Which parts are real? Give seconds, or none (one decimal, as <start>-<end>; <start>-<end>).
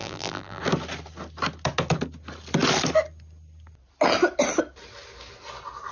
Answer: 0.6-5.9